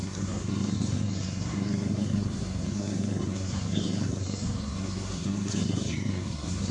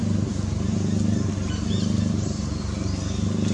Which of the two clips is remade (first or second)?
first